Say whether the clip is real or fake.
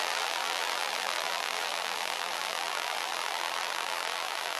fake